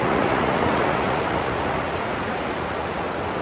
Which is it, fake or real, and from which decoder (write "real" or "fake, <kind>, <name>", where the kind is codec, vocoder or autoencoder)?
fake, vocoder, Vocos